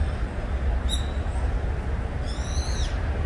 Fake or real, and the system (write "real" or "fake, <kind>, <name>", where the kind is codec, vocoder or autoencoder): real